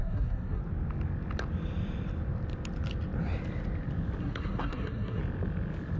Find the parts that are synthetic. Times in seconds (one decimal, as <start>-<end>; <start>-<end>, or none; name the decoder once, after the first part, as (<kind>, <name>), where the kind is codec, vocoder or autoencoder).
0.0-0.6 (codec, SNAC); 4.2-5.2